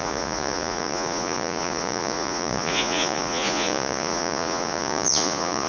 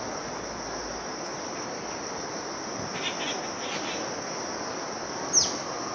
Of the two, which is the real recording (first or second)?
second